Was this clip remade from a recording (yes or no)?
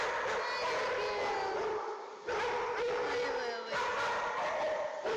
no